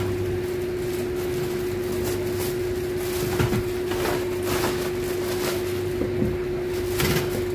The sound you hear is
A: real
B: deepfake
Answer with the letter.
A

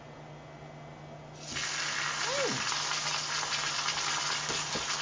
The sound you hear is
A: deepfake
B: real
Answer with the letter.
B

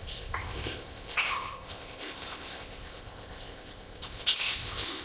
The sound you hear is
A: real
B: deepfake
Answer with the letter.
B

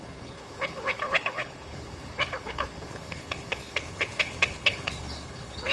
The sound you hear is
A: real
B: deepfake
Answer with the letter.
B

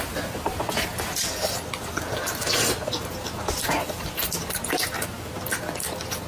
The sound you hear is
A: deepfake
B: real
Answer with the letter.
B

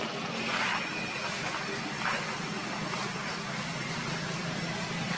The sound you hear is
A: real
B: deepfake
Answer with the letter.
A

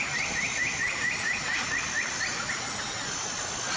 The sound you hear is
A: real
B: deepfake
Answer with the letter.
A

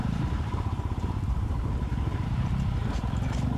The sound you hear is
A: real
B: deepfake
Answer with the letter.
B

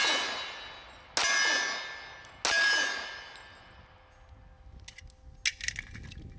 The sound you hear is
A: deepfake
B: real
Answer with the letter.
B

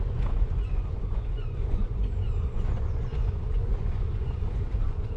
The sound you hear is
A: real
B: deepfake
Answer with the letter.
B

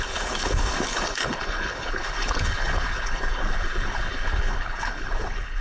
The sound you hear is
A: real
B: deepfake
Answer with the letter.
B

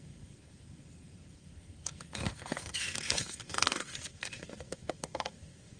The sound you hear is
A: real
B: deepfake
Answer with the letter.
B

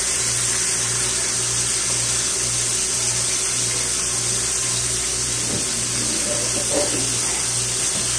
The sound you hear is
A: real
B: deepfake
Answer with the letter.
A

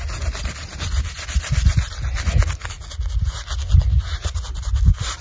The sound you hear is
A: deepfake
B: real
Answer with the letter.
B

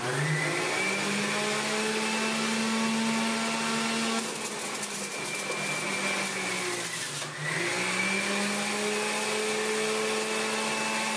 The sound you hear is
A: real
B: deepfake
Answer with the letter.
A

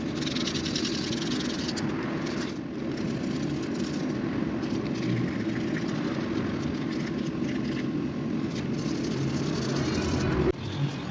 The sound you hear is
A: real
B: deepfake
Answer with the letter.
A